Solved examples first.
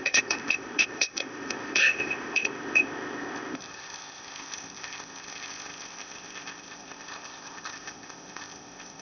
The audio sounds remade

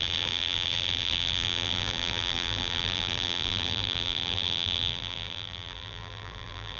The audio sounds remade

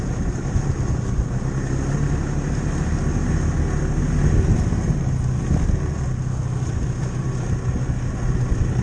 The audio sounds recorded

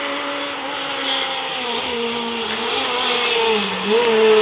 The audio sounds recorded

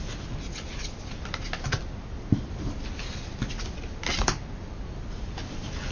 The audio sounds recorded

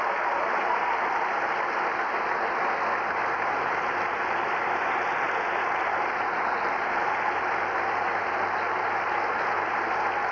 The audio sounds recorded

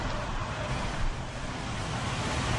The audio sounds remade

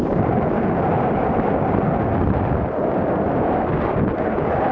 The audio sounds recorded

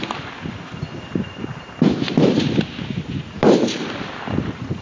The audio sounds remade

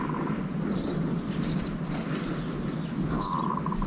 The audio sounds recorded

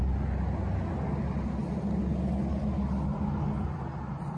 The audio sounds recorded